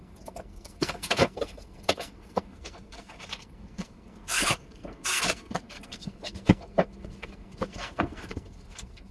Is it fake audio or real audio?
fake